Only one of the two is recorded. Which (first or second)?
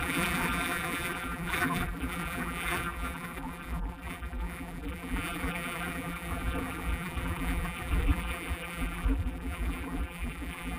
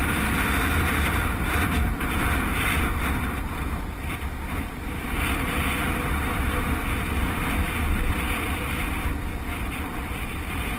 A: second